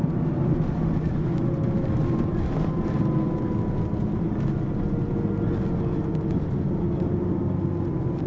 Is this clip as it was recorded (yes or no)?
yes